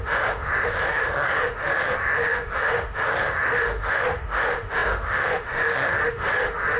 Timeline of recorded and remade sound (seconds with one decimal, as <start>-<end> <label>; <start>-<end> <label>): 0.0-6.8 remade